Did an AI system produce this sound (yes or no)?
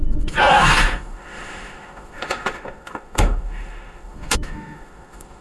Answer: yes